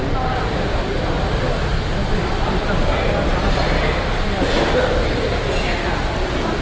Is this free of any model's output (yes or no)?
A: yes